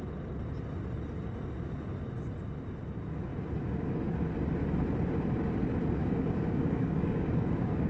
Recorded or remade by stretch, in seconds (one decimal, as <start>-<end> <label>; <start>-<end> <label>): 0.0-6.0 recorded; 6.0-7.9 remade